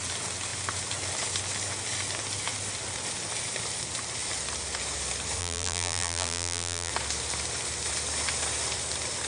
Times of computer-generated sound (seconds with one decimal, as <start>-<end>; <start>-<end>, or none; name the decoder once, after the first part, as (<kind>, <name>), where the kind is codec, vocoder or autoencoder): 5.4-6.9 (vocoder, BigVGAN v2)